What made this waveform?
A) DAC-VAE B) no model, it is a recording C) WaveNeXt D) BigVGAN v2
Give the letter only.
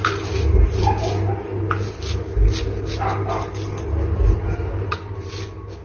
B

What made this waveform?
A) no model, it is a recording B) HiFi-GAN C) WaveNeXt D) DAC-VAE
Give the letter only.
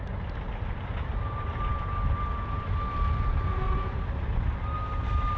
A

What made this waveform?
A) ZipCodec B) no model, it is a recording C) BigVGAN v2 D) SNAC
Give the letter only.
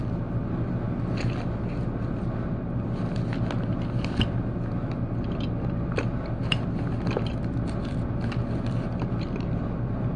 B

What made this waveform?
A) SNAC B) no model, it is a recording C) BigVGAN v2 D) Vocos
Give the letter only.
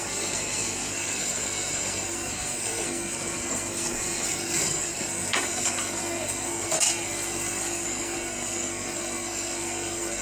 A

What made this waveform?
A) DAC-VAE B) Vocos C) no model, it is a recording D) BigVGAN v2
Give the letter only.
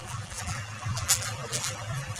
D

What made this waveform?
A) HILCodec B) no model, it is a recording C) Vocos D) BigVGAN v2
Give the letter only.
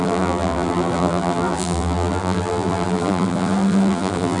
D